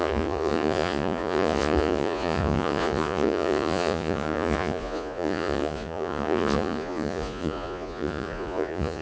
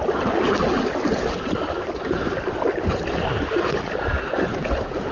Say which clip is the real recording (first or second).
second